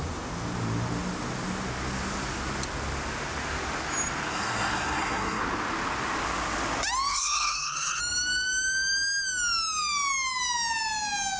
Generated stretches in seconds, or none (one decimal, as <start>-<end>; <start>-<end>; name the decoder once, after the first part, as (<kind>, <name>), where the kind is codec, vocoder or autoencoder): 4.3-5.4 (codec, SNAC); 7.1-8.0